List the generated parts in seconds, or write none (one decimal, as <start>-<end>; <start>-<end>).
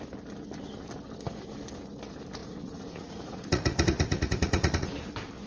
2.4-5.1